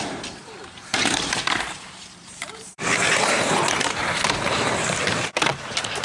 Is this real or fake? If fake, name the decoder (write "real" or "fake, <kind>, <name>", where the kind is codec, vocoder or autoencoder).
fake, vocoder, BigVGAN v2